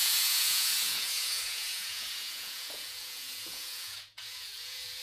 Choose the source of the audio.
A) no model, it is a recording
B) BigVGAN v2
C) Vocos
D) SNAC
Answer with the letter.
C